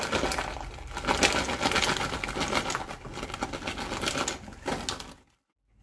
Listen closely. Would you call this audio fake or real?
real